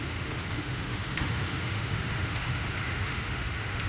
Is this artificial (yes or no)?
yes